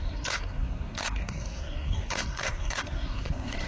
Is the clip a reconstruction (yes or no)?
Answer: yes